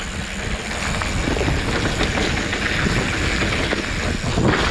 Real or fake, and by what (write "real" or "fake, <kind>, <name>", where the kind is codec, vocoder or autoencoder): real